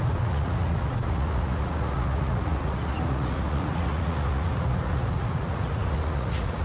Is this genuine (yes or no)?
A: no